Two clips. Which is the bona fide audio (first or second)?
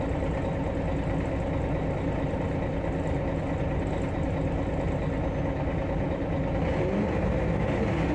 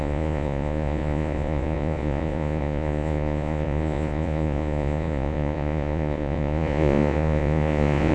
first